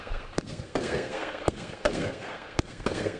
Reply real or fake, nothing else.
fake